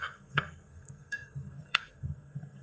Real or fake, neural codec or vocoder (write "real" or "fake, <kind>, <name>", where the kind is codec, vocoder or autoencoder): fake, codec, SNAC